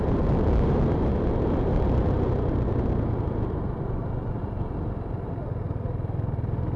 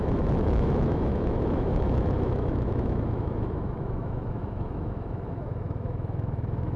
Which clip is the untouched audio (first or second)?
first